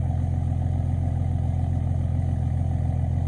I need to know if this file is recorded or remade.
recorded